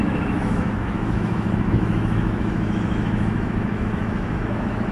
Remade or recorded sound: remade